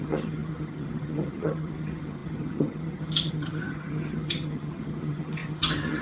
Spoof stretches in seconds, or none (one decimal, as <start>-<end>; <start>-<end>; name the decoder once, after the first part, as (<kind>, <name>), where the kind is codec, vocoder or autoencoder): 0.0-6.0 (vocoder, HiFi-GAN)